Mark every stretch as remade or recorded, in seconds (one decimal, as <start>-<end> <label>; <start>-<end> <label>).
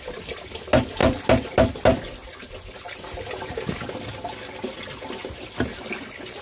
0.0-6.4 recorded